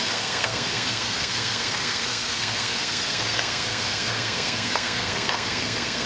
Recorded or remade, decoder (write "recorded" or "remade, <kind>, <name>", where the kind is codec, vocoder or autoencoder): remade, codec, SNAC